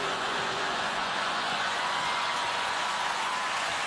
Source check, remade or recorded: remade